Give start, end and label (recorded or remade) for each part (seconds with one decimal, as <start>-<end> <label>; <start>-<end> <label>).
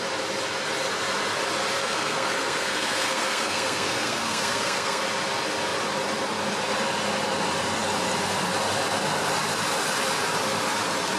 0.0-1.8 recorded; 1.8-5.0 remade; 5.0-11.2 recorded